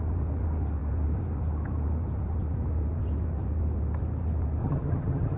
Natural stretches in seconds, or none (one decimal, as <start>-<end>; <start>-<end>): 0.0-4.6